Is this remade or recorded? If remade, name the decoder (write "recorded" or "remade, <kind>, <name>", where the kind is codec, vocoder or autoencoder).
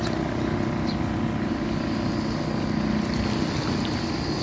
recorded